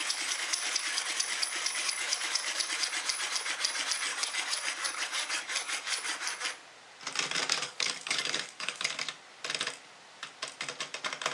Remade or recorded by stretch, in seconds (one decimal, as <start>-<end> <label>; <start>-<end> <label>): 0.0-2.7 remade; 2.7-4.1 recorded; 4.1-6.2 remade; 6.2-7.4 recorded; 7.4-8.9 remade; 8.9-11.3 recorded

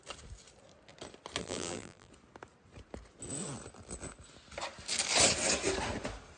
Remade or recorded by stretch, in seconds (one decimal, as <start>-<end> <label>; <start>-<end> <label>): 0.0-1.4 recorded; 1.4-2.1 remade; 2.1-6.4 recorded

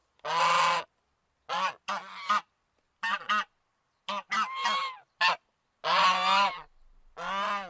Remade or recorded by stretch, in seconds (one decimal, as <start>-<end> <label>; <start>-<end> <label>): 0.0-7.7 recorded